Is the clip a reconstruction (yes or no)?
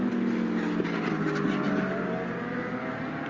no